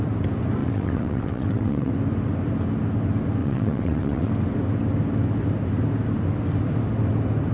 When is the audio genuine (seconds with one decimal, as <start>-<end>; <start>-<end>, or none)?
0.0-0.6; 1.9-3.4; 4.3-7.5